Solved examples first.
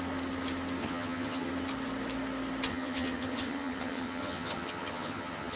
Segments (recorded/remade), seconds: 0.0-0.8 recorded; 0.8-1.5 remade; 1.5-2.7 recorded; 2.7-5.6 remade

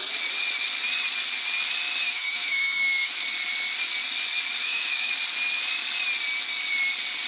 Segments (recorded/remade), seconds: 0.0-2.0 recorded; 2.0-3.2 remade; 3.2-4.6 recorded; 4.6-5.1 remade; 5.1-7.3 recorded

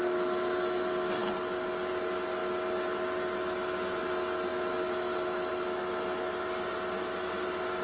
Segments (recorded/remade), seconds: 0.0-7.8 recorded

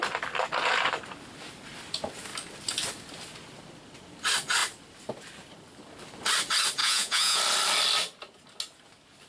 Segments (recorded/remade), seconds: 0.0-6.8 recorded; 6.8-7.4 remade; 7.4-9.3 recorded

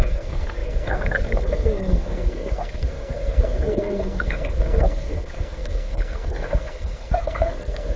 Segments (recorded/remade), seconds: 0.0-8.0 remade

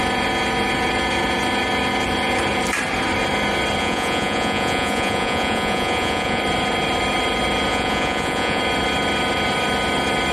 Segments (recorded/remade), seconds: 0.0-3.8 recorded; 3.8-6.4 remade; 6.4-7.7 recorded; 7.7-8.6 remade; 8.6-10.3 recorded